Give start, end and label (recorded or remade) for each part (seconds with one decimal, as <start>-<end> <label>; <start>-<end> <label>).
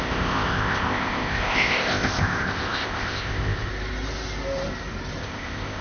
0.0-3.7 remade; 3.7-5.2 recorded; 5.2-5.8 remade